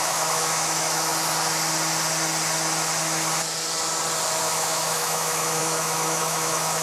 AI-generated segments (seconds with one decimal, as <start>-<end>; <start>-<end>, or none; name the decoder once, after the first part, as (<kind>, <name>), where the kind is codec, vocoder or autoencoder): 0.0-1.1 (autoencoder, DAC-VAE); 4.4-6.8